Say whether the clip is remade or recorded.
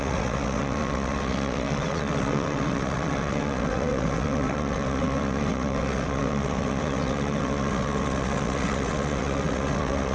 remade